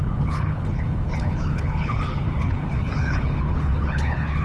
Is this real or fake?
fake